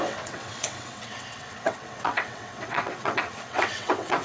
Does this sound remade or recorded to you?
remade